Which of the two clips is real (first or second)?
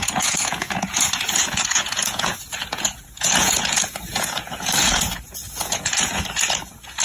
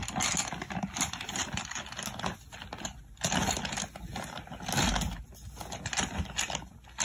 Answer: second